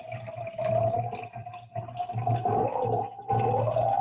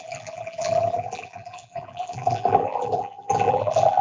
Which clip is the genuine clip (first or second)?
first